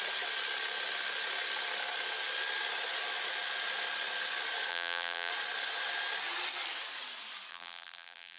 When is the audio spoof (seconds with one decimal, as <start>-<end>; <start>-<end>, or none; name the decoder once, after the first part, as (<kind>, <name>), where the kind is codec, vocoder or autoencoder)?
4.7-5.3 (vocoder, BigVGAN v2); 7.5-8.4